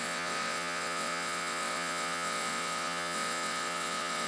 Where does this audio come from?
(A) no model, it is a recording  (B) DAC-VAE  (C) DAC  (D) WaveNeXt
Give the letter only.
D